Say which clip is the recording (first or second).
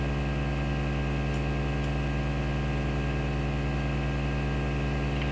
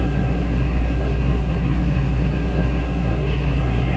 first